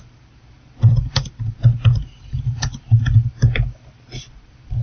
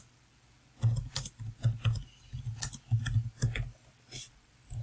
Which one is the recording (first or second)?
second